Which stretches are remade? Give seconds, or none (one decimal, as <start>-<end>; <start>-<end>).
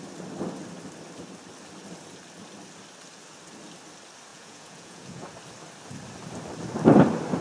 4.3-5.3